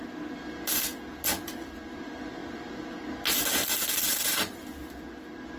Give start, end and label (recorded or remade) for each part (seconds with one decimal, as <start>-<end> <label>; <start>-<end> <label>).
0.0-5.6 recorded